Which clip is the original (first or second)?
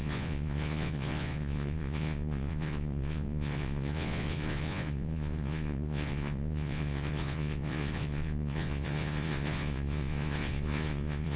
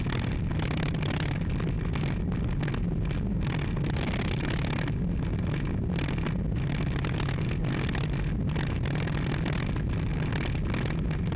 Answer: second